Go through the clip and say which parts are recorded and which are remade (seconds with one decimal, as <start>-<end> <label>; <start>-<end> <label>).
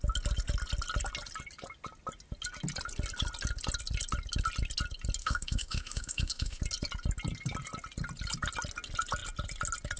0.0-5.2 recorded; 5.2-6.6 remade; 6.6-10.0 recorded